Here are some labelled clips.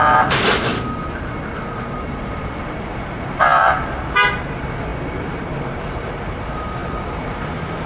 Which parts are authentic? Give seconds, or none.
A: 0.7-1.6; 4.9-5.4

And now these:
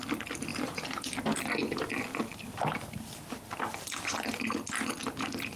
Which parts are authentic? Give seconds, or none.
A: 0.0-5.6

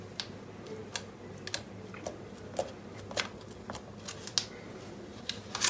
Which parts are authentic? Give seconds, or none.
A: 0.0-5.7

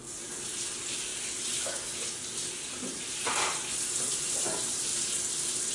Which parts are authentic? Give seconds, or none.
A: 0.0-5.7

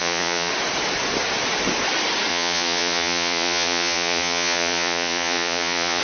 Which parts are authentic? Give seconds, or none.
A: 0.5-2.3

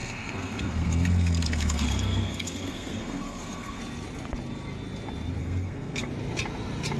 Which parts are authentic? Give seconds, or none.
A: 3.8-5.4; 6.1-7.0

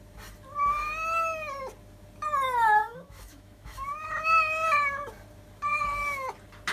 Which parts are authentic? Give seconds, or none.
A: 0.0-2.8; 4.1-5.7; 6.3-6.7

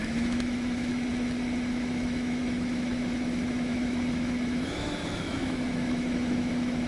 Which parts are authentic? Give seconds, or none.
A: 0.9-1.7